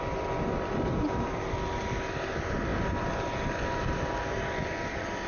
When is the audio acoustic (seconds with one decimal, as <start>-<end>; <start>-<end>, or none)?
0.0-5.3